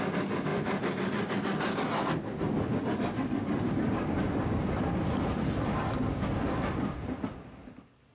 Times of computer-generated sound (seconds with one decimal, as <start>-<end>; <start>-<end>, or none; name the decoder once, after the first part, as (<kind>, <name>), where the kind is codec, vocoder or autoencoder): none